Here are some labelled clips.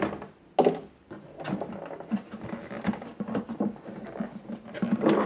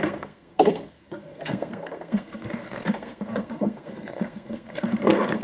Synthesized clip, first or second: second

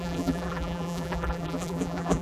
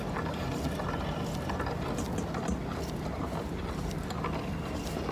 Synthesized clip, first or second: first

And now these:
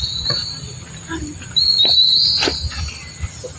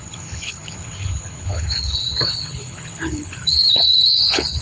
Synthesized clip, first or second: second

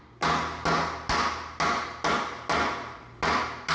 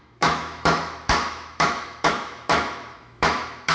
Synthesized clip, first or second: second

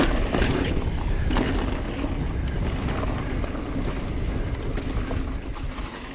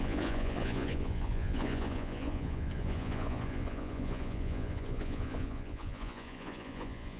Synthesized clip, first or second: second